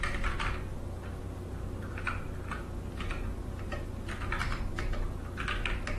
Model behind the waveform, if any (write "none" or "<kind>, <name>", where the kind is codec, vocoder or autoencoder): none